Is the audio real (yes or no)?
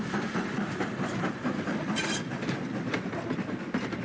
yes